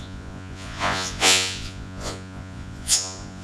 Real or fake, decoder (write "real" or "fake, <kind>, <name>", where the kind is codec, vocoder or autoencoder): fake, vocoder, Vocos